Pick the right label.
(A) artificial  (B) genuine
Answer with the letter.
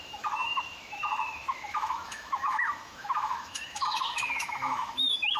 A